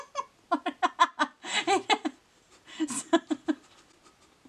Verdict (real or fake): real